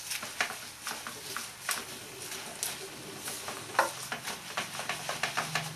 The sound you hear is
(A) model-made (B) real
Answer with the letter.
B